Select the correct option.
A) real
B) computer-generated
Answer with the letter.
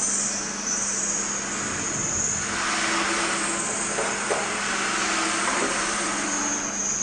A